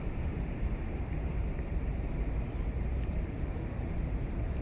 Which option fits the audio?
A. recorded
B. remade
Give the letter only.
B